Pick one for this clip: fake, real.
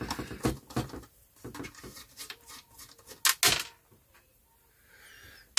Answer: real